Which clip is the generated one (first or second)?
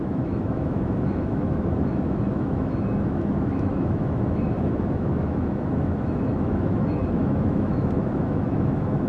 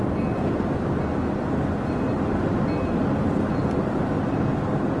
first